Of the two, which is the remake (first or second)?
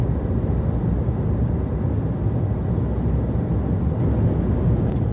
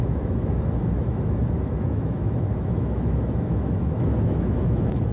second